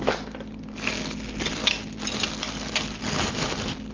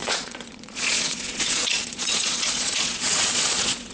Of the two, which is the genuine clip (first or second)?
first